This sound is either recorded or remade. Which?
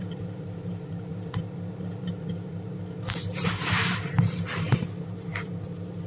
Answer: remade